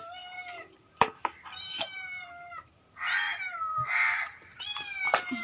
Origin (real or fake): fake